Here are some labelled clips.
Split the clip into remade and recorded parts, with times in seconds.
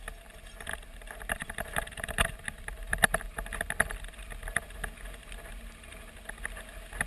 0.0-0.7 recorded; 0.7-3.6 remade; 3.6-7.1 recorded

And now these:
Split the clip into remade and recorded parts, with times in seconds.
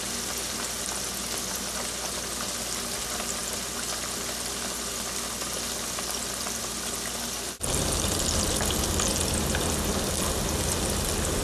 0.0-11.4 recorded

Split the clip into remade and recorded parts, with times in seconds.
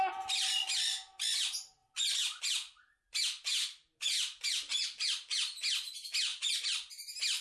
0.0-6.3 recorded; 6.3-6.9 remade; 6.9-7.4 recorded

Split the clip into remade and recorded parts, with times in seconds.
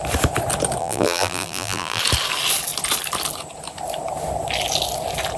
0.0-0.8 recorded; 0.8-2.0 remade; 2.0-5.4 recorded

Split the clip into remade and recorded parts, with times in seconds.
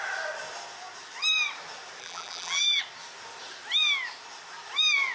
0.0-2.0 recorded; 2.0-2.8 remade; 2.8-5.1 recorded